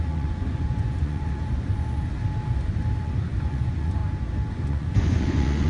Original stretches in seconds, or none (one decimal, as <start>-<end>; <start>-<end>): 2.1-3.0; 4.0-4.5